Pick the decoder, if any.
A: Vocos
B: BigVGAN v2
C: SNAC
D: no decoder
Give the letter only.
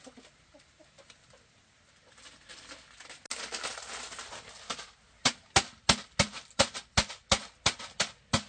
D